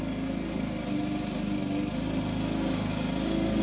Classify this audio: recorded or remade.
recorded